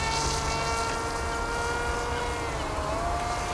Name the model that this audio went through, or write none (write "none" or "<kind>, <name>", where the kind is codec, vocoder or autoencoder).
none